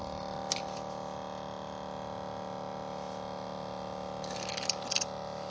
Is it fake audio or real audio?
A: real